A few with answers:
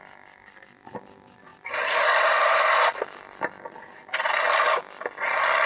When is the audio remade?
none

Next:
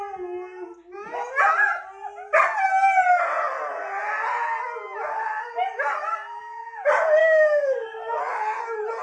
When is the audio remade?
7.2-8.2 (codec, SNAC)

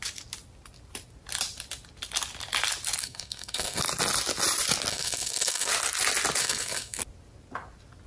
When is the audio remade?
3.0-3.8 (codec, SNAC); 4.9-5.7; 6.4-7.0

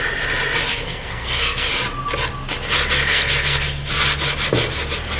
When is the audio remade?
0.7-1.7 (codec, SNAC); 3.1-3.9